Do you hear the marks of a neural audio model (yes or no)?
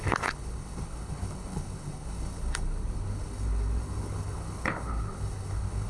yes